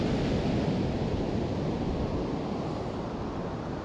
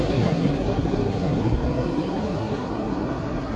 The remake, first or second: second